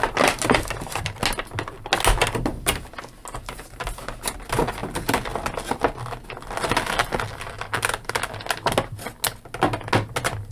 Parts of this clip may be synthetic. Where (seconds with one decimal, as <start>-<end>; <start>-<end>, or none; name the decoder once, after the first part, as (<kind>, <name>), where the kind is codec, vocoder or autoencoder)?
none